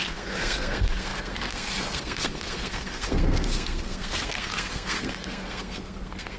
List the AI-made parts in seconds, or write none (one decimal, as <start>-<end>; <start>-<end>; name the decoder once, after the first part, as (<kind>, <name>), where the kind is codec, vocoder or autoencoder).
0.0-6.4 (codec, SNAC)